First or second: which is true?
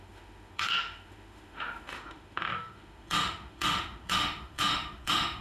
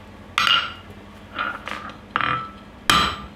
second